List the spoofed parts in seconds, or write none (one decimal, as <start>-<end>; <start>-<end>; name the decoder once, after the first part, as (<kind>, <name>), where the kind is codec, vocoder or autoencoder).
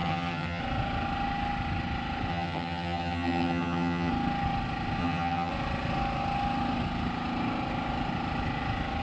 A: 0.0-0.6 (vocoder, HiFi-GAN); 2.3-4.1; 5.0-5.5